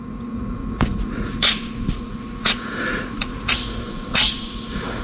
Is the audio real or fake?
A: fake